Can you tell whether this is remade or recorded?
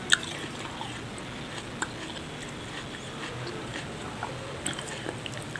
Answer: recorded